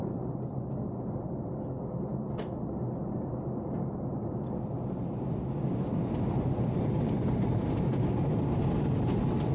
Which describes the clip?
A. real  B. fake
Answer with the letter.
A